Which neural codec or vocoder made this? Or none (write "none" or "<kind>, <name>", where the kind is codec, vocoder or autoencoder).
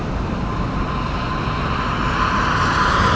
none